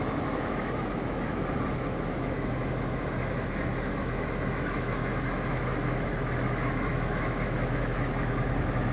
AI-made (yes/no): yes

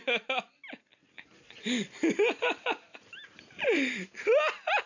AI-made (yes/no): no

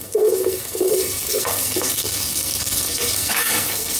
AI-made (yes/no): yes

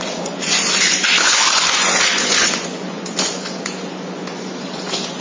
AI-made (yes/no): yes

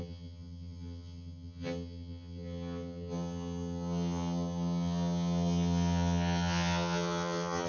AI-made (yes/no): yes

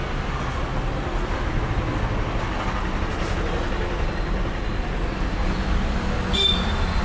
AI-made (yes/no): no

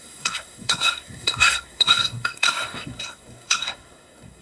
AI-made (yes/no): yes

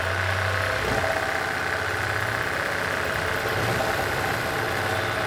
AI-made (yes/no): no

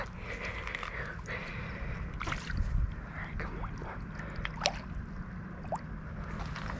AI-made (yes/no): no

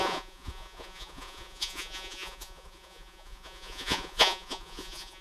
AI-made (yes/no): yes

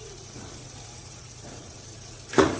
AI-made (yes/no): yes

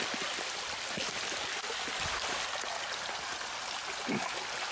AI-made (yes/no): no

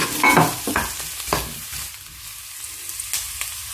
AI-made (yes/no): no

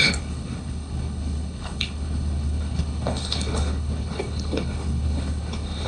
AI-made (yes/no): yes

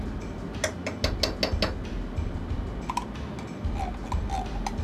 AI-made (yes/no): no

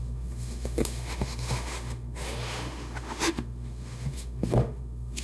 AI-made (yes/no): yes